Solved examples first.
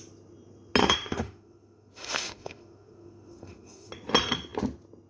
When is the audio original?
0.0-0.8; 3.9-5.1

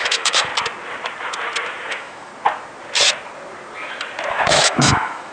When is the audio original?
0.5-1.9; 2.3-4.3

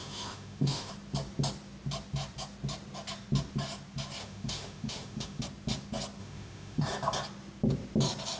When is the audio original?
0.9-4.2; 5.4-6.2; 6.8-8.4

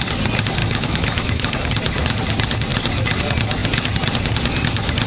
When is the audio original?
0.0-0.6; 1.7-5.1

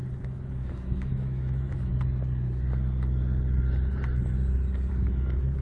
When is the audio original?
0.0-0.5; 1.9-4.9